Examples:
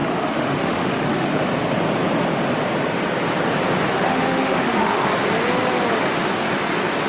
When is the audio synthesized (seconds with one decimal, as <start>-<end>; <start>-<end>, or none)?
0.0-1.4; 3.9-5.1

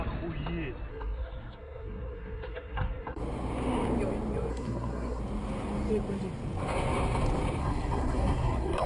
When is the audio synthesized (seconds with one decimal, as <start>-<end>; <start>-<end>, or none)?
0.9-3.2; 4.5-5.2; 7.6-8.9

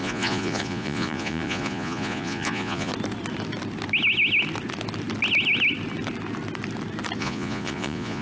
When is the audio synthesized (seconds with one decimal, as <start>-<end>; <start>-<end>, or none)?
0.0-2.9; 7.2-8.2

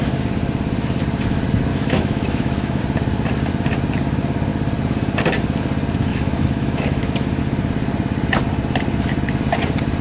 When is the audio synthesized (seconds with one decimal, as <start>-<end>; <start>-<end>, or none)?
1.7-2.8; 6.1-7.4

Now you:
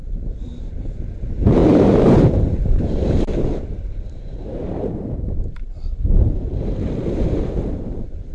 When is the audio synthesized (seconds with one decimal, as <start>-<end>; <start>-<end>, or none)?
0.0-8.3

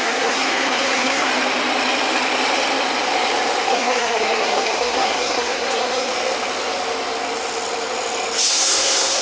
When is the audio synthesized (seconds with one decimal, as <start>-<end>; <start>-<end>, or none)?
0.0-1.3; 3.7-6.1; 8.5-9.2